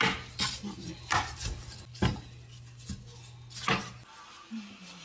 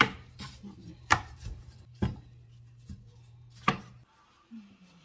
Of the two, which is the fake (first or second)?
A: second